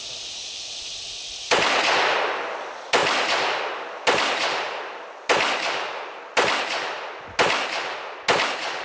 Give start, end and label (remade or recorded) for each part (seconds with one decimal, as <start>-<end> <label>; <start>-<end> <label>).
0.0-3.0 recorded; 3.0-3.6 remade; 3.6-8.8 recorded